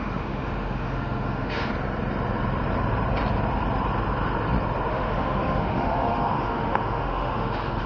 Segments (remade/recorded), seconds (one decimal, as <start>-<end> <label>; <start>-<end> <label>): 0.0-1.7 remade; 1.7-4.9 recorded; 4.9-7.9 remade